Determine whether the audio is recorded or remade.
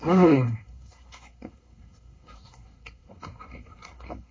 remade